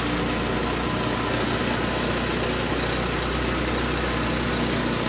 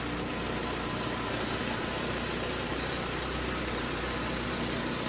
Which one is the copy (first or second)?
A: second